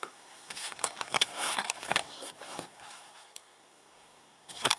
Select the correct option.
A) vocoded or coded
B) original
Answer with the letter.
A